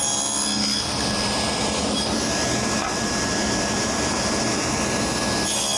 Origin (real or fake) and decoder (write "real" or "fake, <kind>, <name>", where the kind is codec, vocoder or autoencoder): real